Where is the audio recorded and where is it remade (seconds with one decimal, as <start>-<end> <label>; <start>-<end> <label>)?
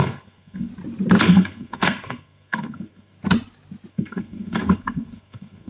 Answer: 0.0-0.7 remade; 0.7-1.2 recorded; 1.2-3.2 remade; 3.2-3.9 recorded; 3.9-5.7 remade